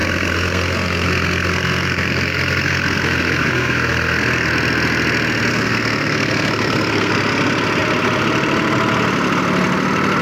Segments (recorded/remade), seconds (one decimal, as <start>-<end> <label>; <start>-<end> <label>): 0.0-4.5 remade; 4.5-5.5 recorded; 5.5-7.1 remade; 7.1-10.2 recorded